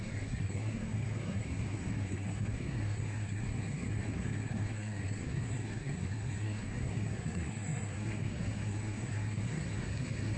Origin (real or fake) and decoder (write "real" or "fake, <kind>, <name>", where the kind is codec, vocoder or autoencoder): fake, codec, SNAC